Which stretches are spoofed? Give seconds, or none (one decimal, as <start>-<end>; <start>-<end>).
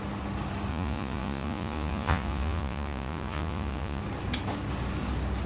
0.7-4.0